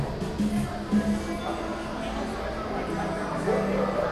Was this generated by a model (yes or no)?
no